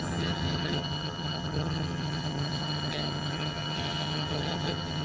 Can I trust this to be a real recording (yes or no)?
no